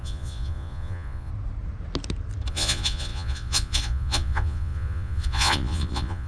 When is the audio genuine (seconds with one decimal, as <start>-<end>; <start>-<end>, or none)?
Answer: 1.3-2.5